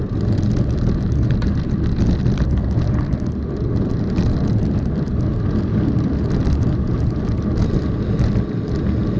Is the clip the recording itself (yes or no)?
yes